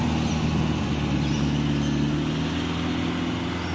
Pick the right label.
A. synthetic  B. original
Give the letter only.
B